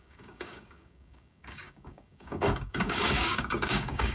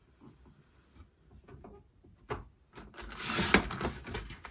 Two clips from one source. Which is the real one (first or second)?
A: second